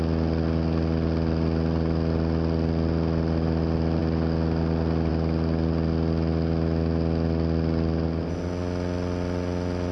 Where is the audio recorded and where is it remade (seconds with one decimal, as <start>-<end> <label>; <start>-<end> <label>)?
0.0-9.9 recorded

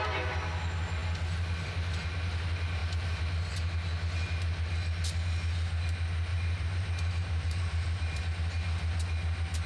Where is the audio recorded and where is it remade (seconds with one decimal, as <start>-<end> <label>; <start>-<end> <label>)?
0.0-6.3 recorded; 6.3-8.2 remade; 8.2-9.7 recorded

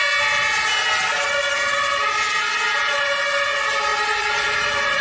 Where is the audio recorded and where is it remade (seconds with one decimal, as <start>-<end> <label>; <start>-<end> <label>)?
0.0-3.9 recorded; 3.9-5.0 remade

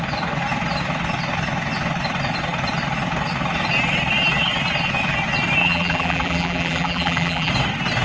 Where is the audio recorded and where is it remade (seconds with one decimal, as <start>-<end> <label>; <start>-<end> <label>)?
0.0-5.6 recorded; 5.6-7.5 remade; 7.5-8.0 recorded

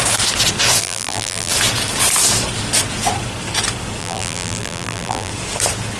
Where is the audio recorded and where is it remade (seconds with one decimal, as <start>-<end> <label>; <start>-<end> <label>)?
0.0-0.8 recorded; 0.8-1.5 remade; 1.5-4.0 recorded; 4.0-5.3 remade; 5.3-6.0 recorded

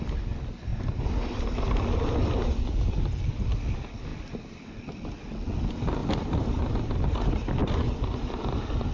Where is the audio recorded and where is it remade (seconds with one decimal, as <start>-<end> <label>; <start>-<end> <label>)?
0.0-0.7 recorded; 0.7-2.8 remade; 2.8-4.1 recorded; 4.1-4.7 remade; 4.7-6.0 recorded; 6.0-6.6 remade; 6.6-8.9 recorded